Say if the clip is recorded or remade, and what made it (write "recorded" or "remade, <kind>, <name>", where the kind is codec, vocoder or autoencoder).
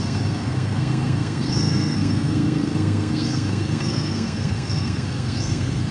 remade, codec, SNAC